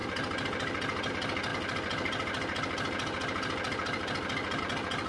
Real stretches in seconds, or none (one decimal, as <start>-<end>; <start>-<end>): 0.0-5.1